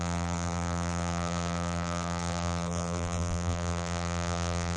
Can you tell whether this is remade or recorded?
remade